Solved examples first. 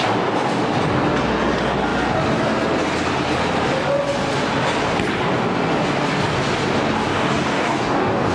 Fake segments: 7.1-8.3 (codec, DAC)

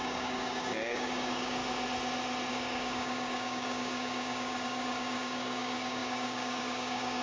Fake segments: 0.0-1.6 (codec, DAC); 2.5-7.2

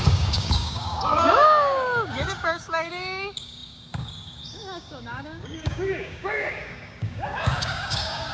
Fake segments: 0.0-8.3 (codec, DAC)

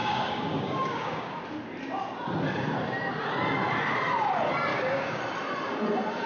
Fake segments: 0.0-1.4 (codec, DAC); 4.7-5.2

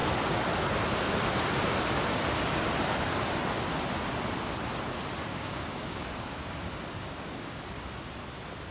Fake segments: 5.3-7.6 (codec, DAC)